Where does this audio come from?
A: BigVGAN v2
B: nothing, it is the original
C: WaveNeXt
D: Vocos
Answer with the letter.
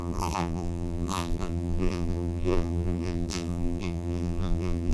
A